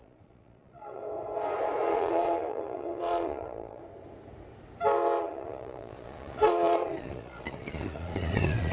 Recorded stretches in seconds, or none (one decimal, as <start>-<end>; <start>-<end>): 1.0-1.9; 3.8-5.2